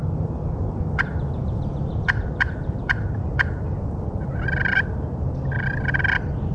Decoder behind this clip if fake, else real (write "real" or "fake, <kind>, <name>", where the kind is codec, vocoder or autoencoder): real